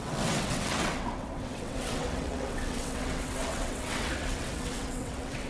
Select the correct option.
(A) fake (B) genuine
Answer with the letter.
A